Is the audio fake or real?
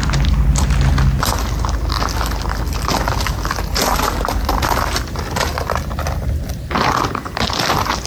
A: real